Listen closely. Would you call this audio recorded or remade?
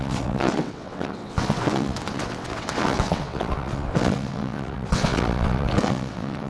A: remade